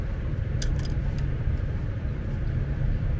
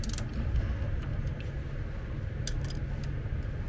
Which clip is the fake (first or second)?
first